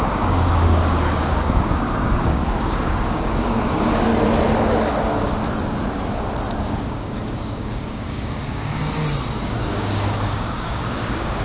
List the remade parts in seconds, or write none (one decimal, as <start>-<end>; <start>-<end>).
0.0-4.1; 6.6-8.8; 9.4-11.4